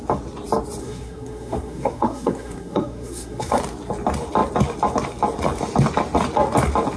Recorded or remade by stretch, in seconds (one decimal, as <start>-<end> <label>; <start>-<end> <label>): 0.0-0.8 recorded; 0.8-3.6 remade; 3.6-7.0 recorded

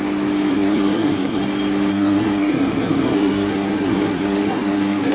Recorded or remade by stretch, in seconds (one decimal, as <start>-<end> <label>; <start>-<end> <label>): 0.0-0.5 recorded; 0.5-1.4 remade; 1.4-1.9 recorded; 1.9-5.1 remade